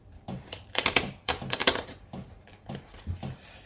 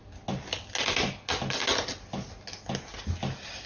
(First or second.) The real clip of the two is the second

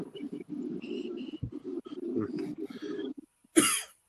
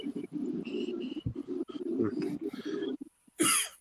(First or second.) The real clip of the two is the first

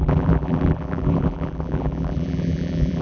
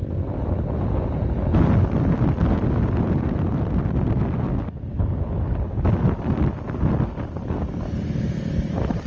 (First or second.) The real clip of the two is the second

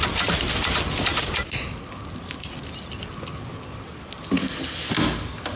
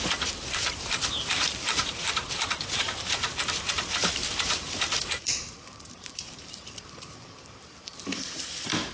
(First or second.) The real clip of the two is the first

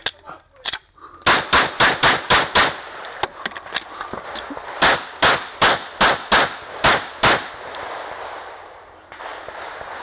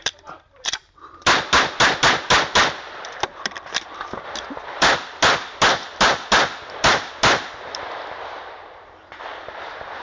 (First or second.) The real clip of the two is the first